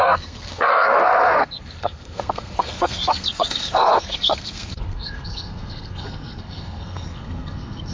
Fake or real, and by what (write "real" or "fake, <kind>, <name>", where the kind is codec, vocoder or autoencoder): fake, codec, SNAC